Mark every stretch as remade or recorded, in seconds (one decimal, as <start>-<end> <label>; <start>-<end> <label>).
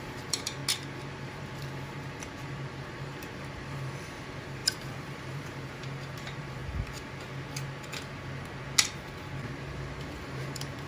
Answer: 0.0-0.6 remade; 0.6-1.1 recorded; 1.1-6.6 remade; 6.6-9.6 recorded; 9.6-10.9 remade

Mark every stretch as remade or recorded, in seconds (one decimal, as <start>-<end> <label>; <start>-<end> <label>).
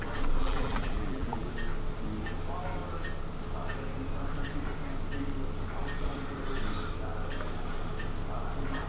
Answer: 0.0-0.4 recorded; 0.4-1.5 remade; 1.5-8.9 recorded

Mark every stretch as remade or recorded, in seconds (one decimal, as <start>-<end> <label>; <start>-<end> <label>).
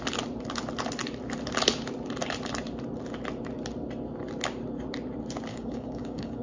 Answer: 0.0-5.5 recorded; 5.5-6.4 remade